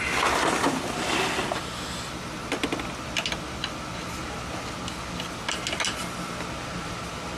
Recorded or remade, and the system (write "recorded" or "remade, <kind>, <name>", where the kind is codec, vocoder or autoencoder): recorded